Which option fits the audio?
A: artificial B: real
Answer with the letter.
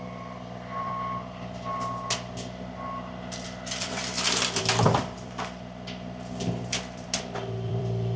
A